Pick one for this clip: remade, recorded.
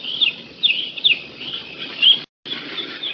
recorded